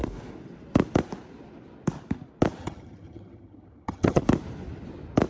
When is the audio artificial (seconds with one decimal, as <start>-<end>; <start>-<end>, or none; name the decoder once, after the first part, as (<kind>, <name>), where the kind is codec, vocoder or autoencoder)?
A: 2.6-4.2 (vocoder, HiFi-GAN)